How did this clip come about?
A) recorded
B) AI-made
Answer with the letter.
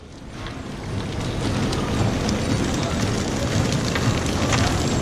A